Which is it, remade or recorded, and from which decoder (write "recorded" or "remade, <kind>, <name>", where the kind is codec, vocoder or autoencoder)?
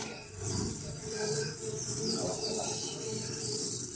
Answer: remade, vocoder, BigVGAN v2